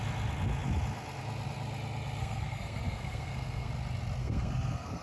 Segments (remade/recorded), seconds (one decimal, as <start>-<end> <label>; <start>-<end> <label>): 0.0-2.2 recorded; 2.2-3.7 remade; 3.7-4.2 recorded; 4.2-5.0 remade